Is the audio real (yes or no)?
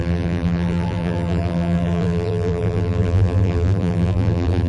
no